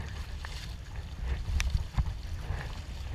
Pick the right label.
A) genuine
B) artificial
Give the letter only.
A